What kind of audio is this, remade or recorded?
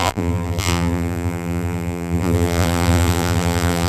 remade